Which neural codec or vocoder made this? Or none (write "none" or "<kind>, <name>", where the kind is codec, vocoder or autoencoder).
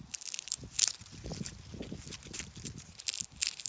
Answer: none